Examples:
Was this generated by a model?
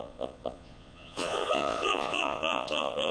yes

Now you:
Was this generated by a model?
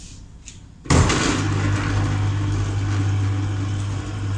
no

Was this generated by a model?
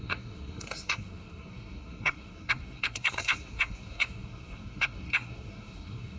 yes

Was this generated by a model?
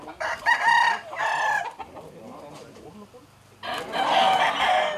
no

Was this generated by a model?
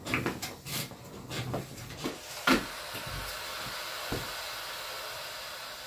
no